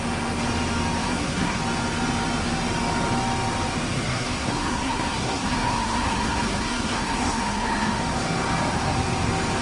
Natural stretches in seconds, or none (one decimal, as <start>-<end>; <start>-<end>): 0.0-1.0; 1.6-3.9; 8.0-9.6